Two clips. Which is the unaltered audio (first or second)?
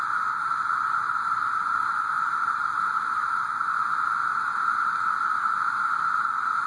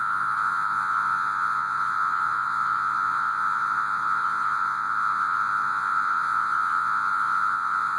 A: first